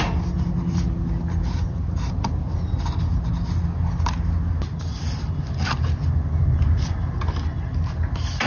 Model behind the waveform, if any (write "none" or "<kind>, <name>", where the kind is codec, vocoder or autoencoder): none